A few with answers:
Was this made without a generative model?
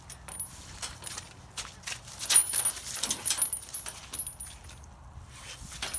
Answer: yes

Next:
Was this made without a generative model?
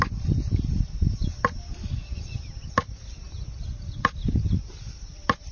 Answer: yes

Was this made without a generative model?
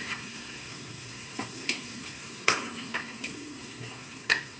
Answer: no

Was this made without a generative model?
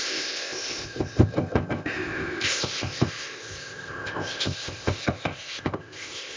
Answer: no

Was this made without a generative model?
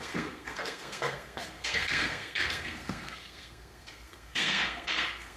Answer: no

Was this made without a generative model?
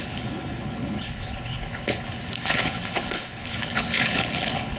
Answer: no